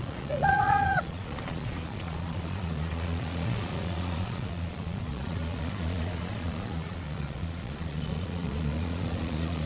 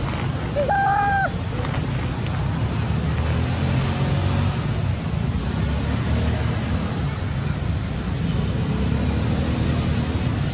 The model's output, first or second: first